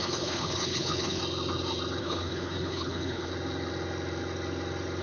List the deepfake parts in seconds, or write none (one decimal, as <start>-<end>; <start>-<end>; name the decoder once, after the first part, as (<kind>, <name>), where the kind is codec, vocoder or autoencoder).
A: 0.0-1.2 (codec, HILCodec); 2.0-3.3